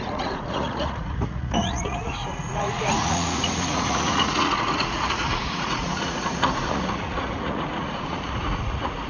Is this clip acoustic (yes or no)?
no